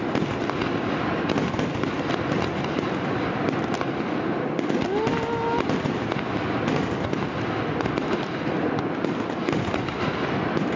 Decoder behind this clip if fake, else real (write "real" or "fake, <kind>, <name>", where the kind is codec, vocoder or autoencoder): real